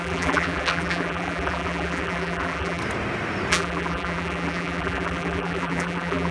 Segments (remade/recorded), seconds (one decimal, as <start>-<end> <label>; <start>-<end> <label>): 0.0-2.8 remade; 2.8-3.5 recorded; 3.5-6.3 remade